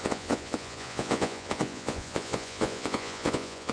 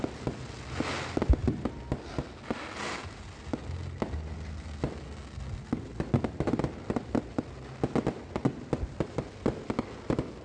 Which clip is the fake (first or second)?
first